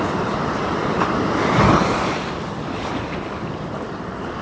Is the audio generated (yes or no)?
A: no